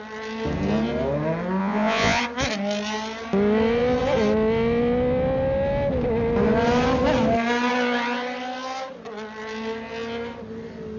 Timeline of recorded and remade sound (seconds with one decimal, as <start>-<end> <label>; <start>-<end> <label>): 0.0-1.6 recorded; 1.6-2.2 remade; 2.2-11.0 recorded

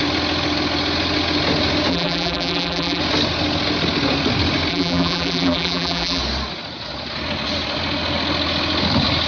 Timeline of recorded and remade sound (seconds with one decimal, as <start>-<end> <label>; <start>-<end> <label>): 0.0-1.9 recorded; 1.9-3.0 remade; 3.0-4.7 recorded; 4.7-6.2 remade; 6.2-9.3 recorded